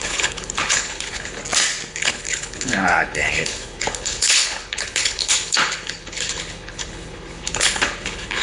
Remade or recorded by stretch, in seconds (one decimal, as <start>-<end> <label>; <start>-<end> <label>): 0.0-1.4 remade; 1.4-1.9 recorded; 1.9-8.4 remade